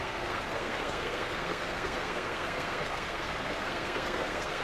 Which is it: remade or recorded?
remade